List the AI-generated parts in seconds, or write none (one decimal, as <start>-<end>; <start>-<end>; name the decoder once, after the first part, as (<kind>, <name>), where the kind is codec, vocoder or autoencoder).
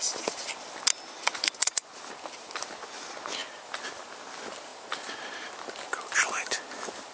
1.3-1.9 (vocoder, Vocos)